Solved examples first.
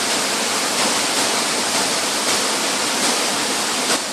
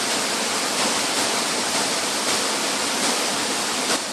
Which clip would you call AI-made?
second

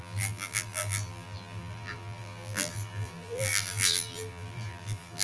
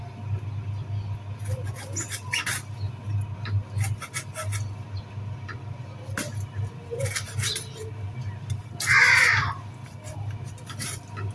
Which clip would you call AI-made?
first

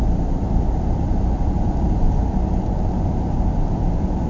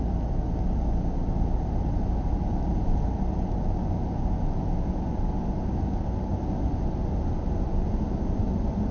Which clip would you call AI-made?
first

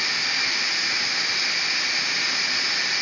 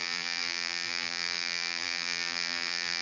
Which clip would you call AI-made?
second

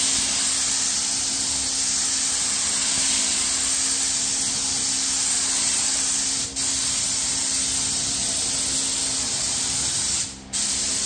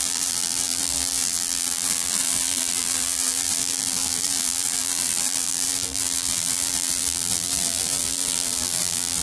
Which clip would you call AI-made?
second